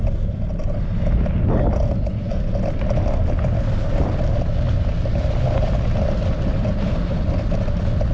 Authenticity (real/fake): real